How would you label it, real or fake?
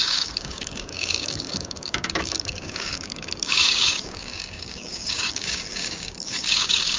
fake